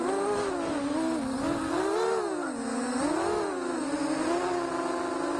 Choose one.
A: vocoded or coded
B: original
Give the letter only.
B